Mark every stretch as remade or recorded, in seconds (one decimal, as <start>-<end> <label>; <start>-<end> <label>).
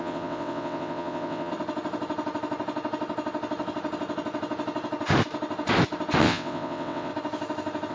0.0-1.5 remade; 1.5-6.2 recorded; 6.2-7.1 remade; 7.1-7.9 recorded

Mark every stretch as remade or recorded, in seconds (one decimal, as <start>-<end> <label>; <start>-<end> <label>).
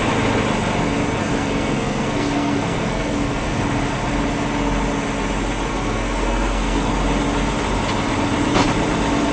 0.0-1.2 recorded; 1.2-3.6 remade; 3.6-5.7 recorded; 5.7-6.9 remade; 6.9-9.3 recorded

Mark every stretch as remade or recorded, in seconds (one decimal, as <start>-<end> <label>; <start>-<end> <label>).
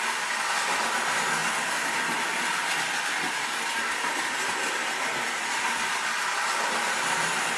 0.0-7.6 recorded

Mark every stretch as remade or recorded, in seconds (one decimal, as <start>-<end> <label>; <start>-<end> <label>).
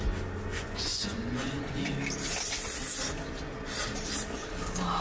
0.0-0.5 recorded; 0.5-1.9 remade; 1.9-5.0 recorded